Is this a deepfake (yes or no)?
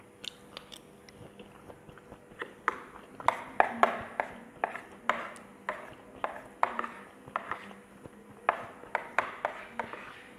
no